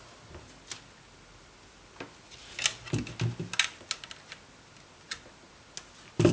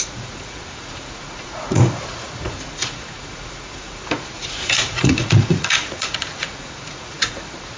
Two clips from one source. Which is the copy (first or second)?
second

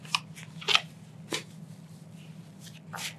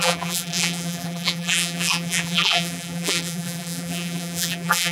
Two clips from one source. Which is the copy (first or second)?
second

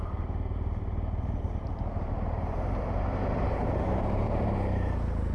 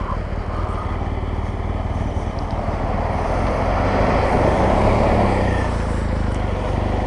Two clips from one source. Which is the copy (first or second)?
first